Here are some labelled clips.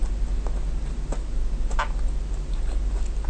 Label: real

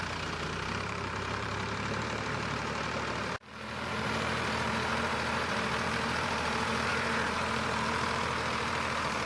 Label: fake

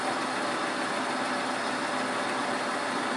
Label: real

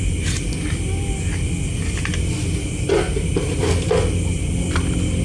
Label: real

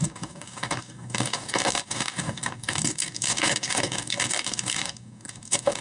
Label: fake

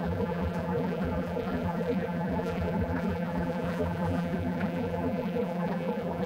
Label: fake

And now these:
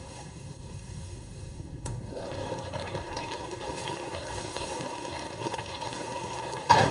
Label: fake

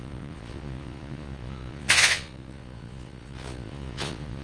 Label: fake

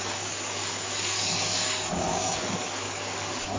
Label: fake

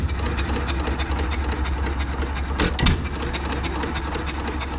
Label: real